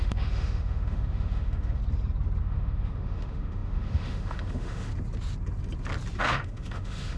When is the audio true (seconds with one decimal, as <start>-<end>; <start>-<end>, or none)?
1.8-2.4; 4.9-6.2